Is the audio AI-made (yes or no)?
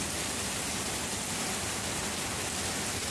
no